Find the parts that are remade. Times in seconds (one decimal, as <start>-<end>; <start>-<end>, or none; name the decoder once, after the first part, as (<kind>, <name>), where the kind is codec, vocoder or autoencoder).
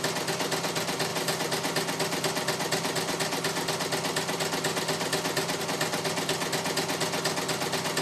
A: none